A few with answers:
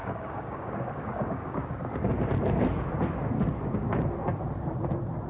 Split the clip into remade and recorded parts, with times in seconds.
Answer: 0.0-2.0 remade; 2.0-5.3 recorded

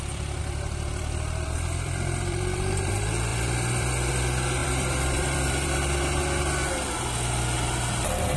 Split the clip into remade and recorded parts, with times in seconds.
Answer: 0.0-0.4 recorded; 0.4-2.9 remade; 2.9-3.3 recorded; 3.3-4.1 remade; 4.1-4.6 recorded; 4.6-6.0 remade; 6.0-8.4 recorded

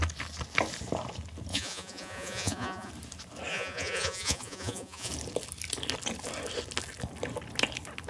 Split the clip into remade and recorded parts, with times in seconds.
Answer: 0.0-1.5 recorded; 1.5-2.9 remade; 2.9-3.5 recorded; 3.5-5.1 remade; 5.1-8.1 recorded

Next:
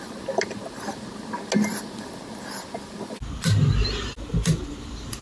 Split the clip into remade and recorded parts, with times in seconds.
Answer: 0.0-5.2 recorded

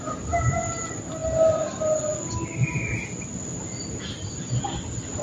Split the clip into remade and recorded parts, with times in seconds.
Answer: 0.0-5.2 recorded

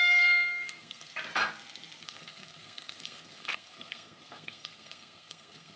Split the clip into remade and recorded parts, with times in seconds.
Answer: 0.0-1.1 remade; 1.1-2.0 recorded; 2.0-5.8 remade

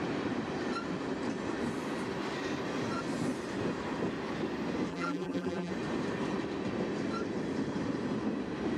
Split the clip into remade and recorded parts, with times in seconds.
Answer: 0.0-4.9 recorded; 4.9-5.7 remade; 5.7-8.8 recorded